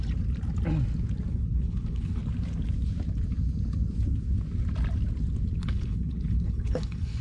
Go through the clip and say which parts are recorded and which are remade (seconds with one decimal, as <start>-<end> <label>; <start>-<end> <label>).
0.0-1.3 recorded; 1.3-2.2 remade; 2.2-5.6 recorded; 5.6-7.2 remade